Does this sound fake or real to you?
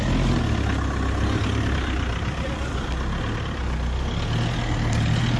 real